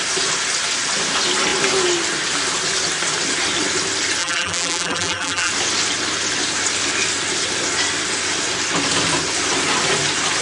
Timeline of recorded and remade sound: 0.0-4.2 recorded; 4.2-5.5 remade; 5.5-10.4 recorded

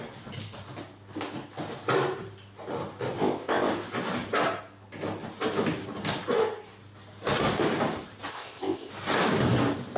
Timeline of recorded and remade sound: 0.0-3.2 recorded; 3.2-3.7 remade; 3.7-8.3 recorded; 8.3-8.9 remade; 8.9-10.0 recorded

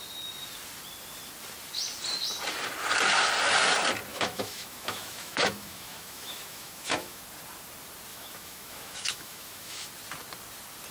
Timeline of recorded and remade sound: 0.0-4.1 recorded; 4.1-7.2 remade; 7.2-8.1 recorded; 8.1-9.9 remade; 9.9-10.9 recorded